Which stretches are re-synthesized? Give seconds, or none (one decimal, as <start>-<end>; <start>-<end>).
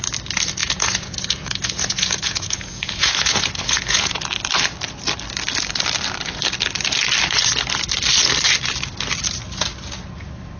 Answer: 0.6-4.2